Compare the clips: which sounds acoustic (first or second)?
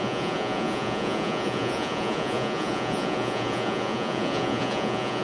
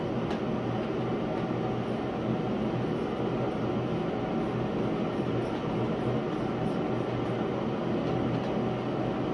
second